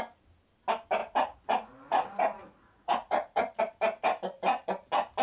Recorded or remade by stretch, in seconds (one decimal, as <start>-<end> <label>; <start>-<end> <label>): 0.0-1.0 recorded; 1.0-3.6 remade; 3.6-5.2 recorded